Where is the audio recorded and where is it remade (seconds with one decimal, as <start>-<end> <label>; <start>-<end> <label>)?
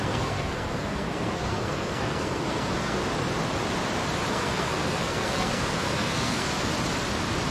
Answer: 0.0-3.0 remade; 3.0-4.3 recorded; 4.3-6.7 remade; 6.7-7.5 recorded